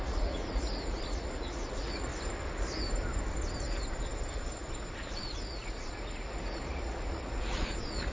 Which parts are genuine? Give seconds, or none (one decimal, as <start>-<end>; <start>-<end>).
2.1-5.1